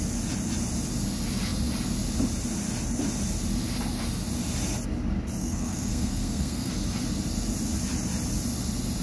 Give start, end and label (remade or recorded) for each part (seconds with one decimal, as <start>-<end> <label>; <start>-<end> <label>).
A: 0.0-5.4 recorded; 5.4-6.7 remade; 6.7-9.0 recorded